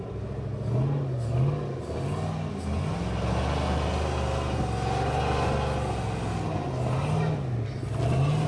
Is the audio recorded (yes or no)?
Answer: yes